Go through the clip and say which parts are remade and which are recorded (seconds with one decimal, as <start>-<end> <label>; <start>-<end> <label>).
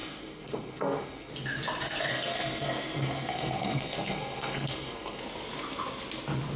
0.0-1.3 remade; 1.3-2.1 recorded; 2.1-5.2 remade; 5.2-6.6 recorded